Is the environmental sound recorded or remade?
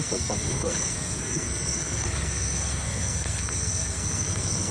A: remade